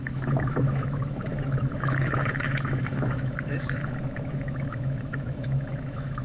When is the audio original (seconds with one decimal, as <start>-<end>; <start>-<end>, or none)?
none